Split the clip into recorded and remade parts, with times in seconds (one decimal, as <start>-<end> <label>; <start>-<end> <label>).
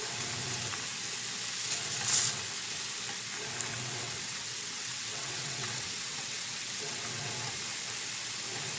0.0-3.7 recorded; 3.7-7.3 remade; 7.3-8.8 recorded